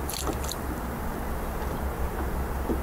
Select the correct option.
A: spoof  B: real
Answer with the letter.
B